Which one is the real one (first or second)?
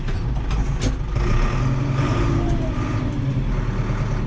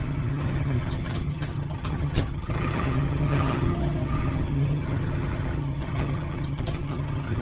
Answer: first